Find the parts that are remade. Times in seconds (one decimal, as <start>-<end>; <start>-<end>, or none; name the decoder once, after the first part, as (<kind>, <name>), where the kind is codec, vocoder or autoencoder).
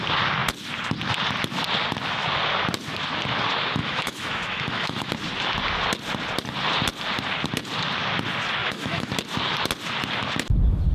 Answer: 3.8-5.1 (autoencoder, DAC-VAE); 8.6-9.1